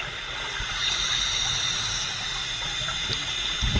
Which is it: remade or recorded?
recorded